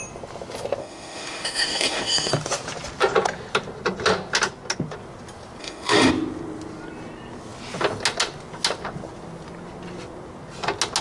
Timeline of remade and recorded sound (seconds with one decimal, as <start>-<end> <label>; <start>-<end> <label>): 0.0-0.8 recorded; 0.8-2.3 remade; 2.3-5.6 recorded; 5.6-6.1 remade; 6.1-11.0 recorded